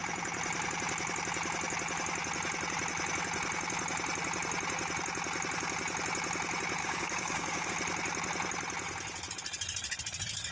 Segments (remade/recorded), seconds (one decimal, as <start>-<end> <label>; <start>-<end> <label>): 0.0-6.8 recorded; 6.8-7.7 remade; 7.7-10.5 recorded